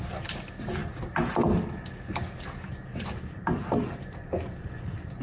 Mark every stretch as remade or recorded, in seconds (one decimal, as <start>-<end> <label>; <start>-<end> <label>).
0.0-2.9 recorded; 2.9-5.2 remade

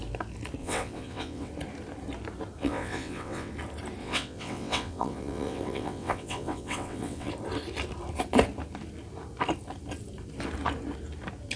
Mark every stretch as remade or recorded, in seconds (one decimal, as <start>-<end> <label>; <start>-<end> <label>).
0.0-0.6 recorded; 0.6-1.5 remade; 1.5-2.6 recorded; 2.6-3.5 remade; 3.5-4.0 recorded; 4.0-7.3 remade; 7.3-11.6 recorded